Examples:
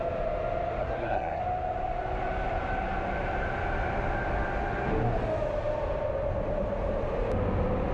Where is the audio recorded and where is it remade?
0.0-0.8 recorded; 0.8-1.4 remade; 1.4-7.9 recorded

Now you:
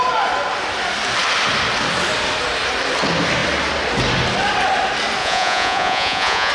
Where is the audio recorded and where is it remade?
0.0-5.2 recorded; 5.2-6.5 remade

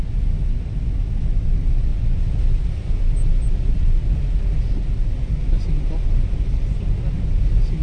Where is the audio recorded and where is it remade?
0.0-7.8 recorded

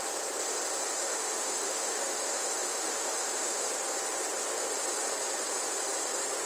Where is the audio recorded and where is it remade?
0.0-1.0 recorded; 1.0-3.7 remade; 3.7-6.5 recorded

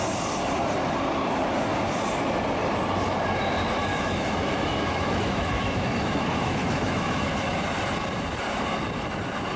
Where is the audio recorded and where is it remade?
0.0-3.9 recorded; 3.9-7.2 remade; 7.2-9.6 recorded

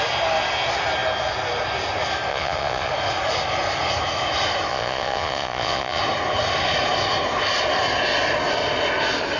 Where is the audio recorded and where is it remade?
0.0-2.3 recorded; 2.3-2.9 remade; 2.9-4.7 recorded; 4.7-6.0 remade; 6.0-9.4 recorded

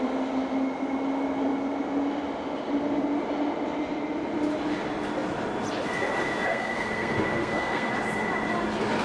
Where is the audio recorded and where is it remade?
0.0-6.5 recorded; 6.5-7.9 remade; 7.9-9.0 recorded

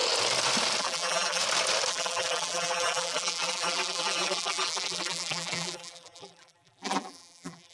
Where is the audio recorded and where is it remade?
0.0-0.8 recorded; 0.8-1.4 remade; 1.4-1.9 recorded; 1.9-7.7 remade